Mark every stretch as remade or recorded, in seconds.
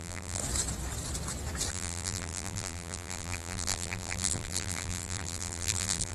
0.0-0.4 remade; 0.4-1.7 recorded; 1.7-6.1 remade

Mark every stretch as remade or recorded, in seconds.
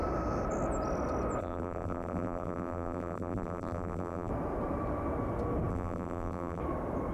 0.0-1.4 recorded; 1.4-4.3 remade; 4.3-5.7 recorded; 5.7-6.6 remade; 6.6-7.1 recorded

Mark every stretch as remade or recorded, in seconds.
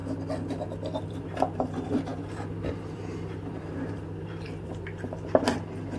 0.0-1.0 recorded; 1.0-6.0 remade